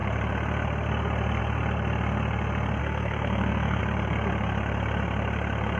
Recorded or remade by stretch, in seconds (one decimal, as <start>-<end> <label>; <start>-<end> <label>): 0.0-2.8 recorded; 2.8-3.8 remade; 3.8-5.8 recorded